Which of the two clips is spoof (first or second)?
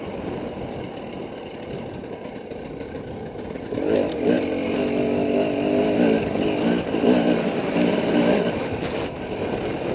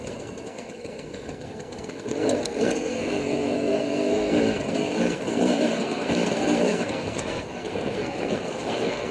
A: second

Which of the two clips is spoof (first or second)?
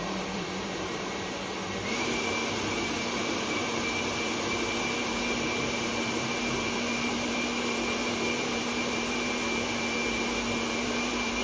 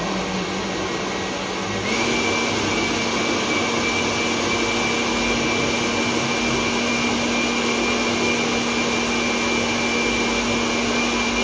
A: first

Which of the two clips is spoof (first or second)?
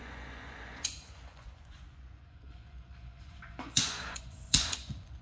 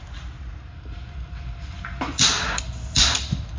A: first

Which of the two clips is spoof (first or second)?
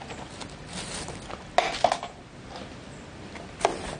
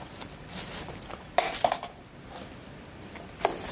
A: second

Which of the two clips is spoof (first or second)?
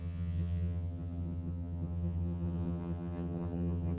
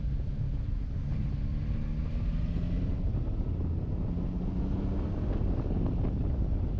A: first